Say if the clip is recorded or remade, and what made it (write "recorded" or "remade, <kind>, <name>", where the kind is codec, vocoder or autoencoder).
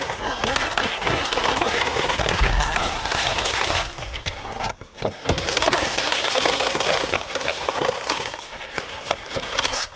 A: remade, codec, SNAC